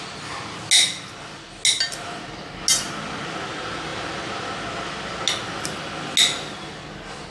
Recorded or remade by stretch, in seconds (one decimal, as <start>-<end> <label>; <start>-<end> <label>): 0.0-7.3 recorded